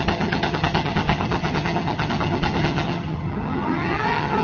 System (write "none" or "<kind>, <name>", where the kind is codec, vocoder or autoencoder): vocoder, HiFi-GAN